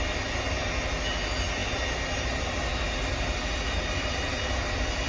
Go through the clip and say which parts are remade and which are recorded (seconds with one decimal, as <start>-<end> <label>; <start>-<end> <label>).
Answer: 0.0-5.1 recorded